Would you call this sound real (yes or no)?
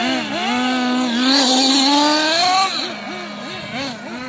yes